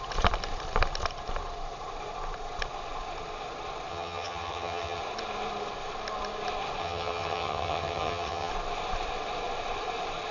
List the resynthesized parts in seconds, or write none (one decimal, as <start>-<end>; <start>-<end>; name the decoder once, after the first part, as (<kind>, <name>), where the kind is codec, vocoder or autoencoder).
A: 3.9-5.0 (vocoder, HiFi-GAN); 6.8-8.5